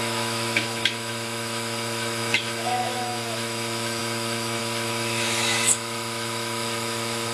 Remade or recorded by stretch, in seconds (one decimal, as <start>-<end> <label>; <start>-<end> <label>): 0.0-7.3 remade